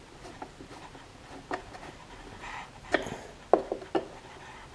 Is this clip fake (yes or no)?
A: no